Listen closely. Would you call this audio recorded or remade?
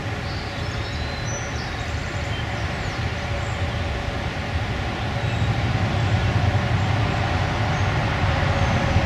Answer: recorded